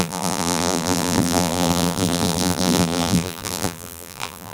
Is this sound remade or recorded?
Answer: remade